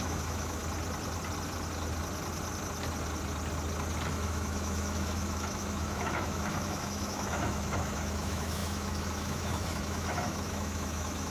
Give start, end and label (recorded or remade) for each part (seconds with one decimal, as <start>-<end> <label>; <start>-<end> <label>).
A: 0.0-0.6 remade; 0.6-4.1 recorded; 4.1-11.3 remade